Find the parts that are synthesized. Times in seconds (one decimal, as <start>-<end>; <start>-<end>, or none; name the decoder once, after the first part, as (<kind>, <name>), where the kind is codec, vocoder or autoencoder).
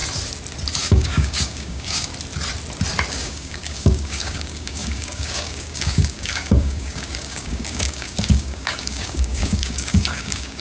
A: 0.8-2.1 (codec, DAC); 3.1-10.6